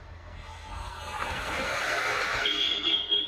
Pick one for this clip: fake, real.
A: fake